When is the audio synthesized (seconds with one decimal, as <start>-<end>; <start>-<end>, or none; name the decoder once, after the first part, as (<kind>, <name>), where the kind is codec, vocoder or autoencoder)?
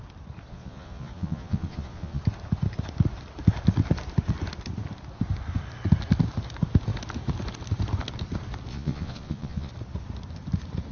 0.5-2.2 (vocoder, Vocos); 8.7-9.7